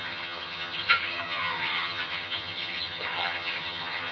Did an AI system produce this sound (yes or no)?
yes